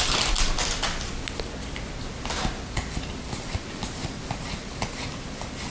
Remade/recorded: recorded